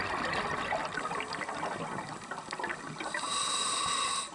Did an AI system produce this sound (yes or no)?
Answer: no